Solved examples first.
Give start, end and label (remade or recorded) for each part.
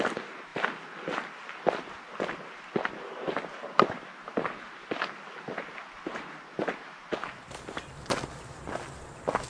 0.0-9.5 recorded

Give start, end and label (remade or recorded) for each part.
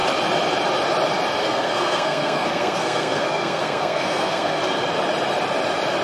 0.0-1.4 recorded; 1.4-4.6 remade; 4.6-6.0 recorded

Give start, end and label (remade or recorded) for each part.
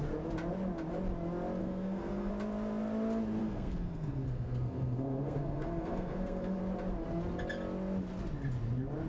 0.0-1.6 recorded; 1.6-2.3 remade; 2.3-3.4 recorded; 3.4-6.6 remade; 6.6-9.1 recorded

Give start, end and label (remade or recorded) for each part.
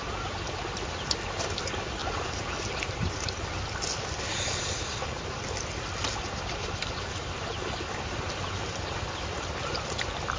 0.0-10.4 recorded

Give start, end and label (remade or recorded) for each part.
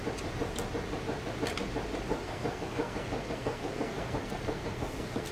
0.0-2.1 recorded; 2.1-5.3 remade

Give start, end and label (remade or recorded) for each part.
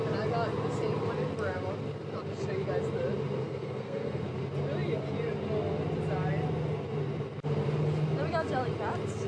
0.0-3.4 recorded; 3.4-4.2 remade; 4.2-9.3 recorded